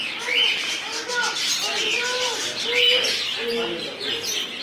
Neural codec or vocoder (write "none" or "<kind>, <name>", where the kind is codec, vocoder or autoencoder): none